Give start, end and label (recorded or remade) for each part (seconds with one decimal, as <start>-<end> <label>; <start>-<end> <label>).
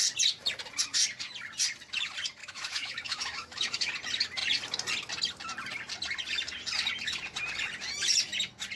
0.0-2.4 recorded; 2.4-3.9 remade; 3.9-8.8 recorded